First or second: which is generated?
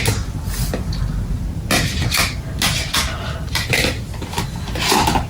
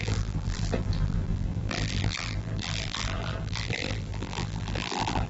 second